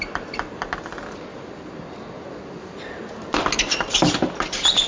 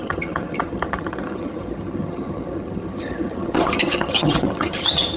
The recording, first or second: first